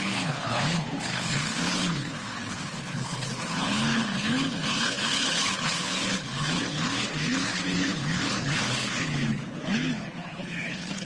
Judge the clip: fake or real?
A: fake